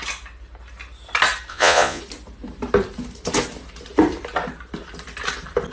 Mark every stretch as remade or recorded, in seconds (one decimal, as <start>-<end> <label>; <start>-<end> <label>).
0.0-1.5 recorded; 1.5-2.0 remade; 2.0-5.7 recorded